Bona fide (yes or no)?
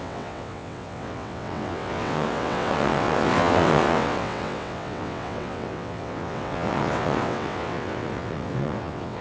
no